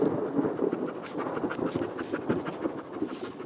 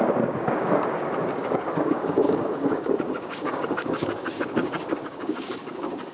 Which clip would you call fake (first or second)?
second